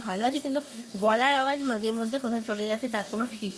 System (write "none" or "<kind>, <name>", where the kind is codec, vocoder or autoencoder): codec, SNAC